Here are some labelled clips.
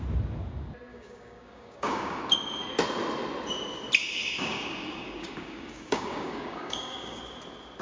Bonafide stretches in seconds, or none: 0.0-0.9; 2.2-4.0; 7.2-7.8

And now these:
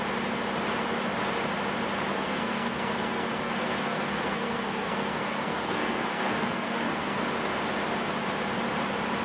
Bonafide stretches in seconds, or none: 0.0-2.1; 7.2-9.2

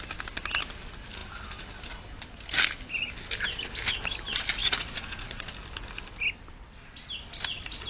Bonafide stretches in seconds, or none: 0.0-4.6; 5.5-7.9

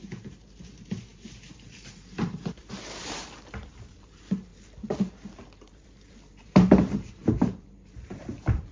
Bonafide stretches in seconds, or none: 4.5-5.1

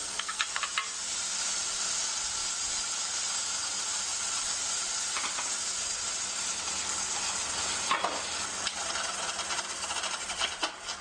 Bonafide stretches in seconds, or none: 0.6-11.0